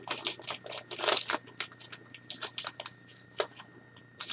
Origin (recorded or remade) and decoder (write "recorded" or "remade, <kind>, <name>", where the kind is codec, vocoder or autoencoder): recorded